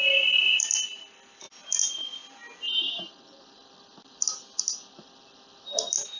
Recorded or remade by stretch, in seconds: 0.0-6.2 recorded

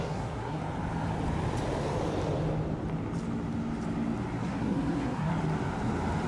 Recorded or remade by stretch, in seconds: 0.0-0.6 remade; 0.6-4.4 recorded; 4.4-5.3 remade; 5.3-6.3 recorded

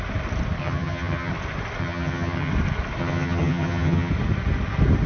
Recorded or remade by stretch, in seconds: 0.0-0.6 recorded; 0.6-1.3 remade; 1.3-1.8 recorded; 1.8-2.5 remade; 2.5-3.0 recorded; 3.0-4.1 remade; 4.1-5.1 recorded

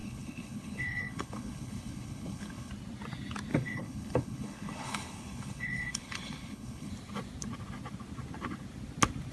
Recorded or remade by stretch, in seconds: 0.0-2.7 remade; 2.7-3.5 recorded; 3.5-6.9 remade; 6.9-9.3 recorded

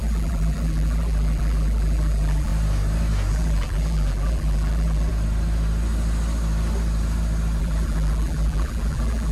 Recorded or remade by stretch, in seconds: 0.0-2.5 remade; 2.5-3.3 recorded; 3.3-5.1 remade; 5.1-7.6 recorded; 7.6-9.3 remade

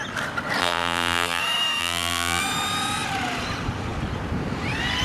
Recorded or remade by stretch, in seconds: 0.0-0.6 recorded; 0.6-1.4 remade; 1.4-1.8 recorded; 1.8-2.4 remade; 2.4-5.0 recorded

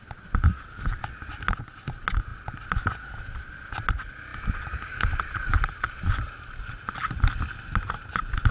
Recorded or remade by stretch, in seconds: 0.0-8.5 recorded